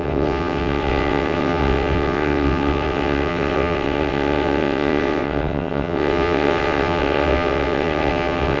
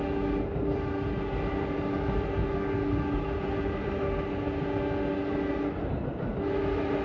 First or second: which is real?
second